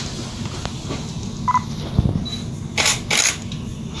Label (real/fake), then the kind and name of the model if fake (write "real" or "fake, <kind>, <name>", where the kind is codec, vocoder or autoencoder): real